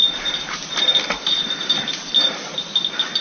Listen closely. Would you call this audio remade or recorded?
recorded